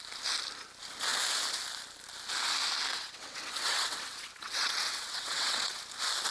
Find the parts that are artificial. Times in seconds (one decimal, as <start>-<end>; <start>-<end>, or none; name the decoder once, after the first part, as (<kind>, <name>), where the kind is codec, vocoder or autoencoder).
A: 2.9-5.8 (vocoder, WaveNeXt)